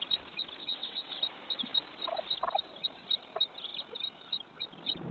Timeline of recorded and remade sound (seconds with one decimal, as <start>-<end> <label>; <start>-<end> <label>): 0.0-0.6 recorded; 0.6-1.2 remade; 1.2-5.1 recorded